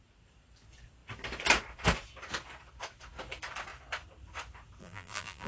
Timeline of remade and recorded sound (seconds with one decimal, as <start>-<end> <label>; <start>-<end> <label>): 0.0-4.8 recorded; 4.8-5.5 remade